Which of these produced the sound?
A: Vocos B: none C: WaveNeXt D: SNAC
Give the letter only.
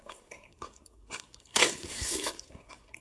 D